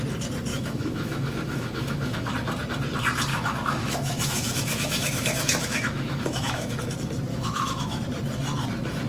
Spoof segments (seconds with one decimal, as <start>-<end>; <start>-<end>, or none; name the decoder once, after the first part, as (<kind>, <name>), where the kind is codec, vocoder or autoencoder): 0.5-2.3 (autoencoder, DAC-VAE); 3.3-6.8; 7.3-8.0